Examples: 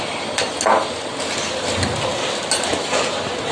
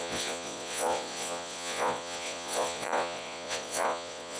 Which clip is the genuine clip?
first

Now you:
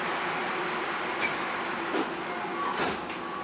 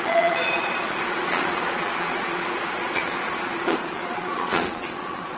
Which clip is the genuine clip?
first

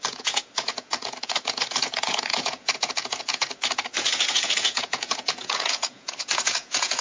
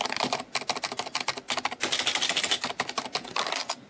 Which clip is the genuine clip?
second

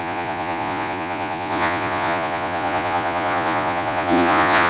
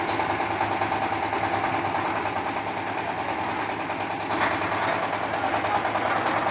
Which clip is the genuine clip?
second